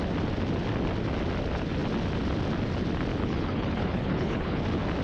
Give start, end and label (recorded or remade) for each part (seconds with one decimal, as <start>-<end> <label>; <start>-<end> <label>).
0.0-3.1 recorded; 3.1-4.6 remade; 4.6-5.0 recorded